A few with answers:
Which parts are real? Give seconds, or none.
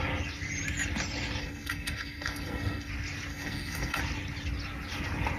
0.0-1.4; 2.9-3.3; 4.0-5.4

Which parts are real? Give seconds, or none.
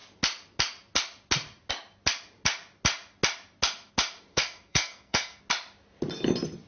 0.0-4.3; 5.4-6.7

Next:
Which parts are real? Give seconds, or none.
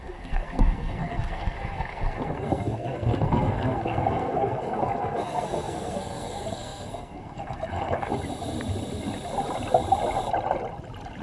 8.1-11.2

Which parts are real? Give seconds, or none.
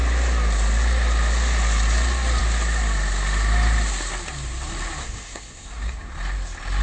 0.0-5.0; 6.1-6.8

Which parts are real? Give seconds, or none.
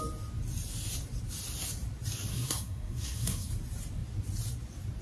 0.0-2.3; 3.5-5.0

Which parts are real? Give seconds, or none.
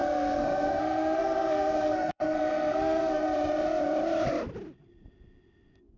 3.2-6.0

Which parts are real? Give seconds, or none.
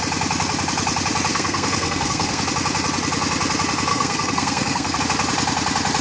0.0-1.3; 2.5-3.9; 5.0-6.0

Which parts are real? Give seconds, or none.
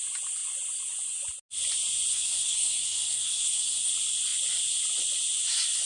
0.0-2.1; 3.9-5.8